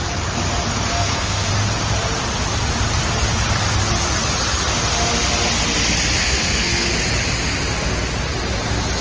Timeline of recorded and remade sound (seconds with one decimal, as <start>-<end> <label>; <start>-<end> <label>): 0.0-0.9 recorded; 0.9-1.5 remade; 1.5-6.2 recorded; 6.2-6.9 remade; 6.9-9.0 recorded